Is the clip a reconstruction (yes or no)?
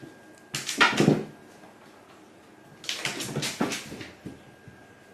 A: no